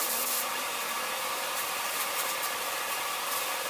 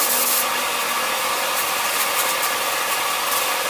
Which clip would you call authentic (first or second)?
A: second